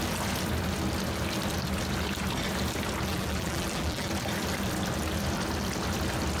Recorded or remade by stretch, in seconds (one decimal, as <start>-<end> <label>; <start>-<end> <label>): 0.0-3.1 recorded; 3.1-4.1 remade; 4.1-6.4 recorded